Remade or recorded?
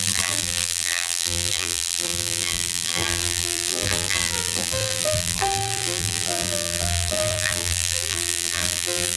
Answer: remade